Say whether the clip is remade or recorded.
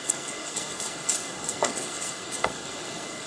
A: remade